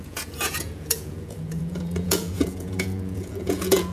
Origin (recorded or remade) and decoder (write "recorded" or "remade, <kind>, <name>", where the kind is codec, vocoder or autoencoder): remade, vocoder, Vocos